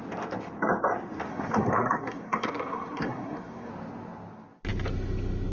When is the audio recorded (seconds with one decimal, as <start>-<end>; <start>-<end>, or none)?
0.0-1.3; 3.7-5.5